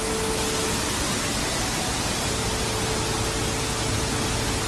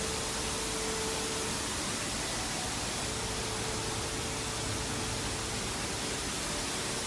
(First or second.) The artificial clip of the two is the second